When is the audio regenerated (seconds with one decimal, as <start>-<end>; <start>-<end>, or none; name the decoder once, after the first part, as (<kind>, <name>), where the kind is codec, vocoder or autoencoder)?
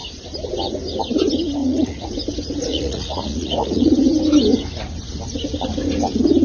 1.6-2.1 (vocoder, Vocos); 2.7-3.9